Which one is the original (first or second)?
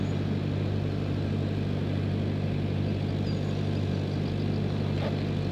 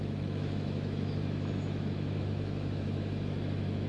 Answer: first